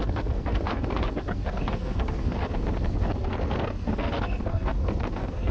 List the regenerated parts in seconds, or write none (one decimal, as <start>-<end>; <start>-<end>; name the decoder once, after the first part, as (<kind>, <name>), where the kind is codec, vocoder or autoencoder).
0.0-5.5 (codec, SNAC)